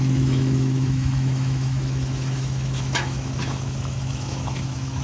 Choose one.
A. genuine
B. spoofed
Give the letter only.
B